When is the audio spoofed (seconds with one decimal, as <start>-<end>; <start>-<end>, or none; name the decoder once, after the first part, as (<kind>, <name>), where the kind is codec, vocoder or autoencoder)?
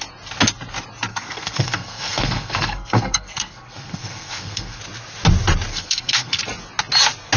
1.1-4.8 (codec, SNAC); 5.7-6.4